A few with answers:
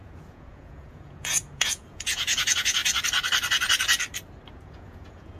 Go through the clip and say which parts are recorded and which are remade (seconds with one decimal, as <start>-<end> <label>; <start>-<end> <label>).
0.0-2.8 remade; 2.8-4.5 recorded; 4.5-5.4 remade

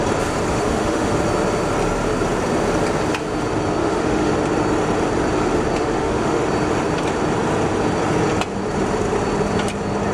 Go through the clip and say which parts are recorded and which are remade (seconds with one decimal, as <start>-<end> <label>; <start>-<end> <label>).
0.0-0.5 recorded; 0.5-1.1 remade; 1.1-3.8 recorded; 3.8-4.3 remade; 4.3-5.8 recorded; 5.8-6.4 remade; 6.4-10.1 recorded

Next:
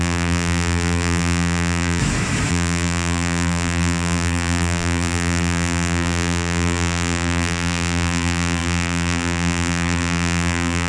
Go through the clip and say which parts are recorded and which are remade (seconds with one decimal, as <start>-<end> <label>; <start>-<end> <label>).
0.0-2.0 remade; 2.0-2.5 recorded; 2.5-10.9 remade